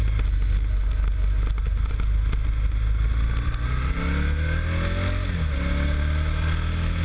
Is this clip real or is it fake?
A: real